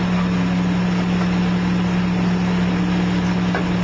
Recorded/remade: recorded